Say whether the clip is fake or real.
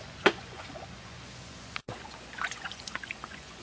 fake